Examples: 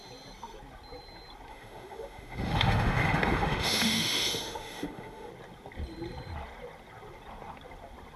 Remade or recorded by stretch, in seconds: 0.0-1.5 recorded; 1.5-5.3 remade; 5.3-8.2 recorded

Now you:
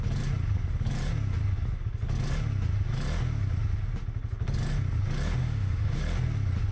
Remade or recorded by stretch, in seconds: 0.0-5.4 recorded; 5.4-6.0 remade; 6.0-6.7 recorded

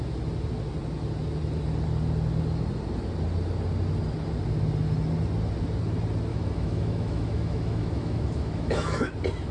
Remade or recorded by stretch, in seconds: 0.0-6.3 recorded; 6.3-9.1 remade; 9.1-9.5 recorded